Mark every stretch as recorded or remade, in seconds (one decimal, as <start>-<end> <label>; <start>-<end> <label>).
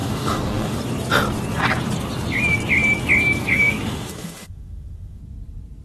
0.0-0.8 remade; 0.8-3.4 recorded; 3.4-5.2 remade; 5.2-5.8 recorded